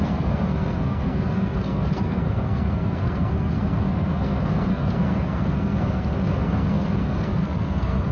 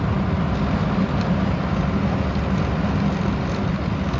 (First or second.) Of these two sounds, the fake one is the first